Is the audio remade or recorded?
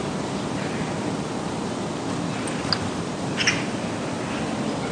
recorded